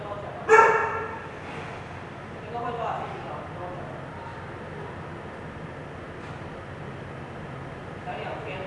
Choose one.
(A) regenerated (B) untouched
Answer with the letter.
B